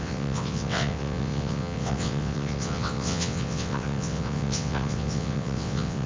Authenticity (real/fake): fake